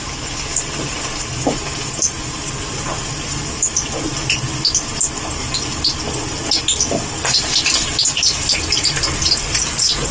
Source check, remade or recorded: recorded